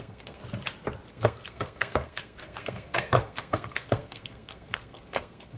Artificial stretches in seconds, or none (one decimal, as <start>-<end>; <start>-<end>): 0.0-0.4; 1.1-5.6